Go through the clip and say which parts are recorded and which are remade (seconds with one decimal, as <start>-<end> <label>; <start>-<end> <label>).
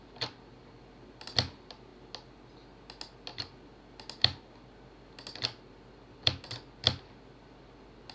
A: 0.0-8.1 recorded